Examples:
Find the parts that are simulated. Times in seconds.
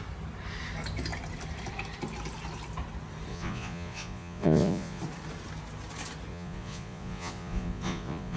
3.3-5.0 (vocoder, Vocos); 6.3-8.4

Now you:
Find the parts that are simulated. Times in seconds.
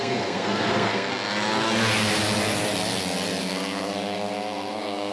0.0-1.1 (codec, SNAC); 3.4-5.1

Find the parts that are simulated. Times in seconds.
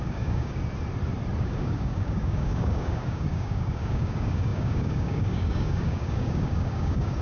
0.0-0.6 (codec, DAC); 1.4-7.2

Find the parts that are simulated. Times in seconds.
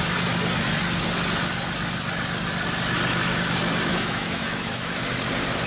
3.9-5.0 (autoencoder, DAC-VAE)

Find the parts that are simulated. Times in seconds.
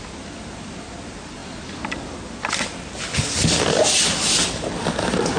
none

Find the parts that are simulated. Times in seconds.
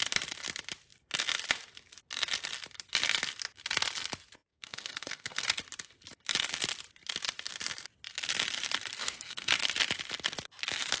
4.5-5.6 (codec, SNAC); 9.0-9.5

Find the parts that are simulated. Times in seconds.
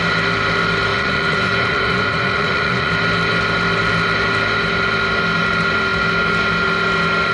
0.9-2.9 (vocoder, Vocos)